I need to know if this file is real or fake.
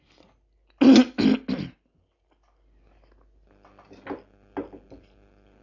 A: real